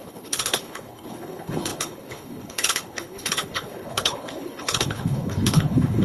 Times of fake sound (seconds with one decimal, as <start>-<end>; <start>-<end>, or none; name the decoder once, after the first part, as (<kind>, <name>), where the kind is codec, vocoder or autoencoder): 0.0-6.0 (codec, HILCodec)